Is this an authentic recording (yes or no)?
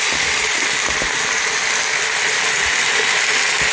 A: yes